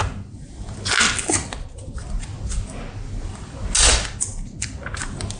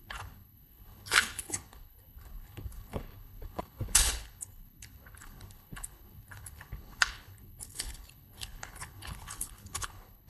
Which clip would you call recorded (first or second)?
first